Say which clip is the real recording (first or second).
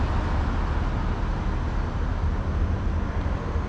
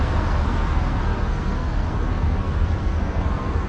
first